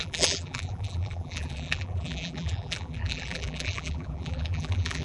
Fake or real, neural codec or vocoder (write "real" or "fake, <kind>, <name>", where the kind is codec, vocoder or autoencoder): fake, vocoder, BigVGAN v2